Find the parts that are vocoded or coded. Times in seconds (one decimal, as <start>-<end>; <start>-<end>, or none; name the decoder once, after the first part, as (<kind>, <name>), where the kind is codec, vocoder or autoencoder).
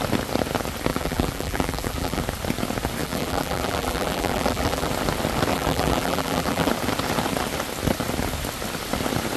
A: 0.9-2.2 (vocoder, BigVGAN v2); 3.0-4.9; 5.5-6.7